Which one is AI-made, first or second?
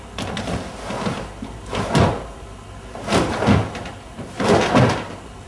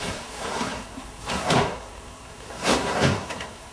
second